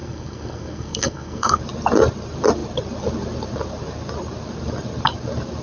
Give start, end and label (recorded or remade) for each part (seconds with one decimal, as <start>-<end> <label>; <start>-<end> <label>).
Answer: 0.0-1.6 remade; 1.6-5.6 recorded